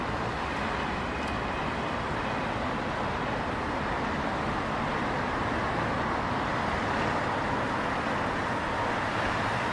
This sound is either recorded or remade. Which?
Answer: recorded